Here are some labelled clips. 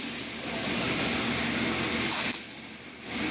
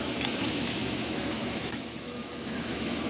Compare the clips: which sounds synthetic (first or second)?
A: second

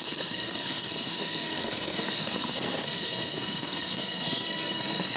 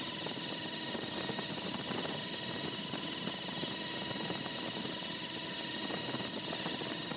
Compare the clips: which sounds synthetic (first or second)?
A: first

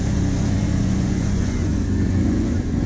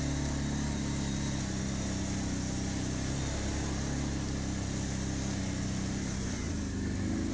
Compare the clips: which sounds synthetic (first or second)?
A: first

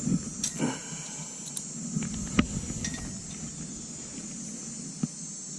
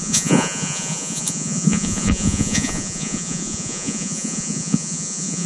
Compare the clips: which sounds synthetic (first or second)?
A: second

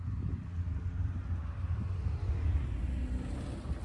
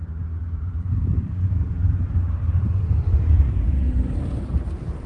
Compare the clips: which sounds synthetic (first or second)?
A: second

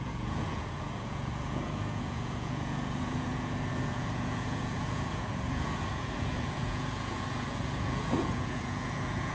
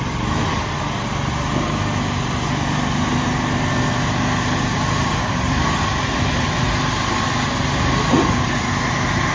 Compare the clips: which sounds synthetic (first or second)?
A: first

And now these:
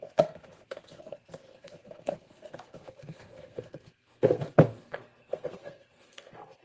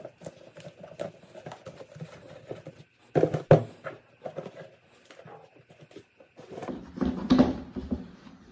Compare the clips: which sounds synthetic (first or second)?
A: first